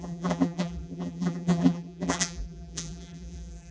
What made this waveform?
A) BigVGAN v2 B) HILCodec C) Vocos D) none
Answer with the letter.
A